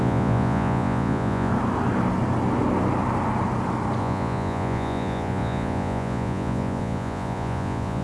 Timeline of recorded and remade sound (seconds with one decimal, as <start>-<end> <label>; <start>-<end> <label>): 0.0-1.5 remade; 1.5-4.0 recorded; 4.0-8.0 remade